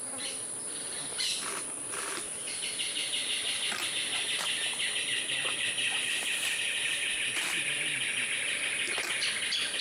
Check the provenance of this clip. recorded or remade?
recorded